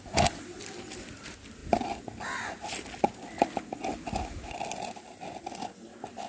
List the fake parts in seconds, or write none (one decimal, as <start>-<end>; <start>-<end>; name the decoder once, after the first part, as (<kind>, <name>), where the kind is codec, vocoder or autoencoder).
none